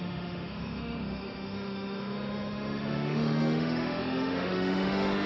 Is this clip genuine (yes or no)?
no